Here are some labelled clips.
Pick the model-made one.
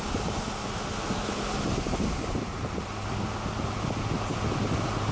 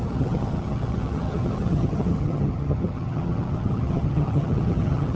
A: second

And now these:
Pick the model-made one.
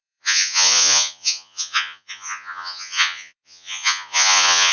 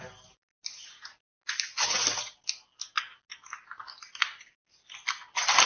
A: first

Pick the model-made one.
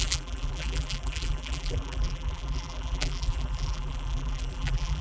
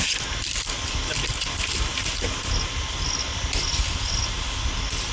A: first